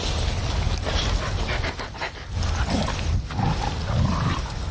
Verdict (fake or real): real